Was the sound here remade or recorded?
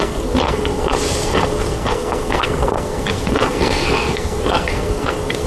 remade